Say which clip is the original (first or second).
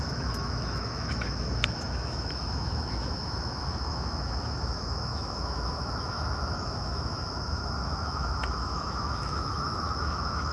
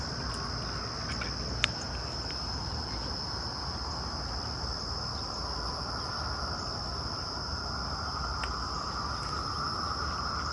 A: second